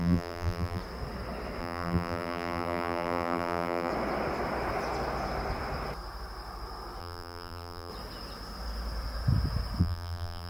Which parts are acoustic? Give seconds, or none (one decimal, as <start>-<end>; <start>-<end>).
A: 0.8-1.6; 3.9-7.0; 7.9-9.8